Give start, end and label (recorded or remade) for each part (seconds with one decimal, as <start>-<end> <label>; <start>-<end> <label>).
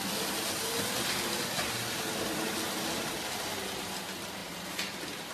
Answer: 0.0-5.3 recorded